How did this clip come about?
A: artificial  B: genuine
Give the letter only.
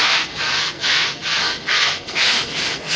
A